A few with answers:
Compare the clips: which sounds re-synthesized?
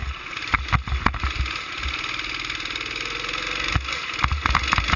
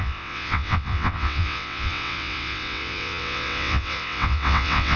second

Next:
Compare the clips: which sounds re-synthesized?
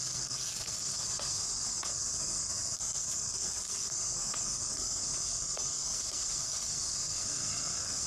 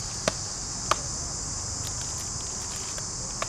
first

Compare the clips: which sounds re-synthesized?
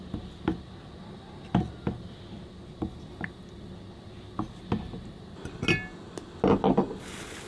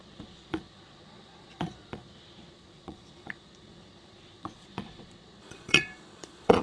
second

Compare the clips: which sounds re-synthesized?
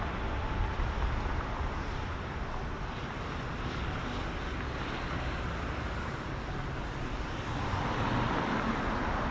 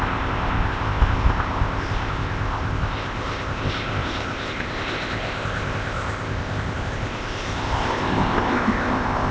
second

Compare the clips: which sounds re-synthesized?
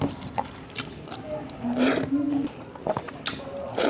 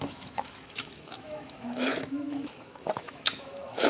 second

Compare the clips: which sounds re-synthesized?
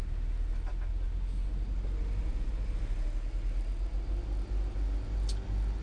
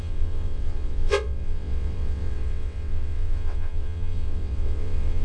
second